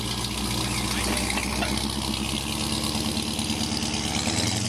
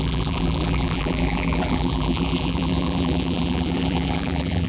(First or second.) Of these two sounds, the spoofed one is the second